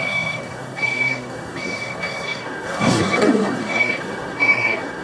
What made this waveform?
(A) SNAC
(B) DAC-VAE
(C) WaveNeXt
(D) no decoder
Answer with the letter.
A